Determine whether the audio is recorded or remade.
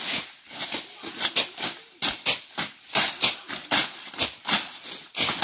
recorded